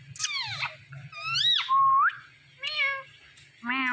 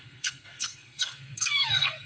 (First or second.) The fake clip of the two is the second